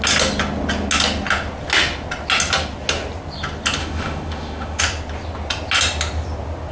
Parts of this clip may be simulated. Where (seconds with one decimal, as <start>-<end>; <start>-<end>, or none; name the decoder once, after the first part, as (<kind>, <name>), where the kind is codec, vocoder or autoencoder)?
3.8-4.8 (autoencoder, DAC-VAE)